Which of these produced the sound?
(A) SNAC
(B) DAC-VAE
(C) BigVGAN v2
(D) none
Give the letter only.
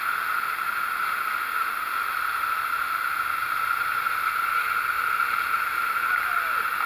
D